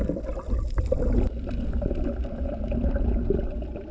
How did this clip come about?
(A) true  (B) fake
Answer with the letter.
A